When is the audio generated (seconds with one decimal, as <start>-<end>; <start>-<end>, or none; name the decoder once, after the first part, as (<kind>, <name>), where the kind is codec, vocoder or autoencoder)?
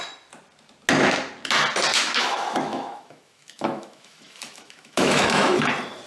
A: 1.9-5.6 (autoencoder, DAC-VAE)